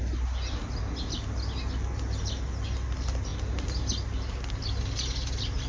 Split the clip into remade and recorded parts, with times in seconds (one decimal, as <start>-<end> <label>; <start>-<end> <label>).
0.0-5.7 recorded

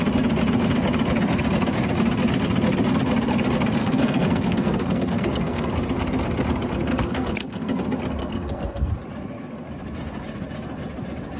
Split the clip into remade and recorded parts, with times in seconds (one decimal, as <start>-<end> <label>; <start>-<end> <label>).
0.0-3.8 recorded; 3.8-5.7 remade; 5.7-6.9 recorded; 6.9-7.8 remade; 7.8-8.2 recorded; 8.2-8.9 remade; 8.9-11.4 recorded

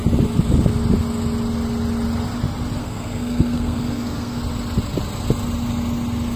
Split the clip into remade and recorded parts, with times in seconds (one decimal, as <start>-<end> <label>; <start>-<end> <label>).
0.0-2.8 recorded; 2.8-4.4 remade; 4.4-6.4 recorded

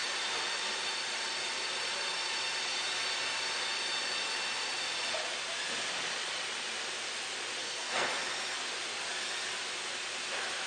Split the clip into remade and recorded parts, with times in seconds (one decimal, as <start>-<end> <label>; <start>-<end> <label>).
0.0-7.6 recorded; 7.6-8.1 remade; 8.1-10.7 recorded